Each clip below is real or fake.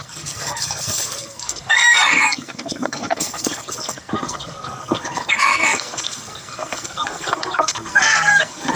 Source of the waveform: fake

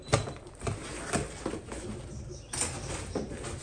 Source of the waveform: real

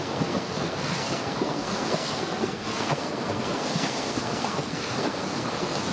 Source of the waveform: fake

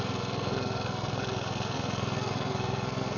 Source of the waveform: fake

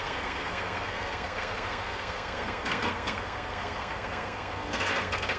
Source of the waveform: fake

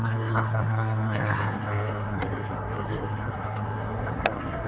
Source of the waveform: fake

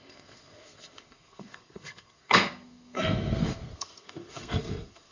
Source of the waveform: fake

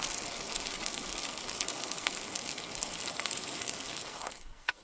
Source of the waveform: fake